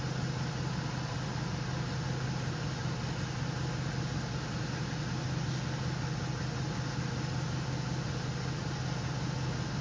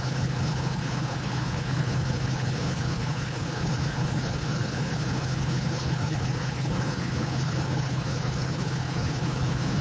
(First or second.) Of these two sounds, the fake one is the second